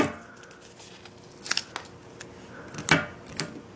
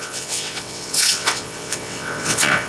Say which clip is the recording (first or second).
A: first